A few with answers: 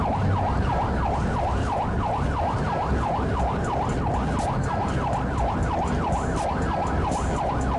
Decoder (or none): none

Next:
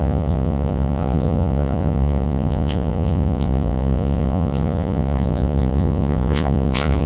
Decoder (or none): vocoder, Vocos